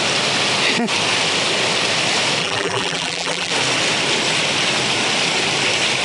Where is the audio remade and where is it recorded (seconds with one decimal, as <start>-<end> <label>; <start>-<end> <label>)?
0.0-2.4 recorded; 2.4-3.5 remade; 3.5-6.0 recorded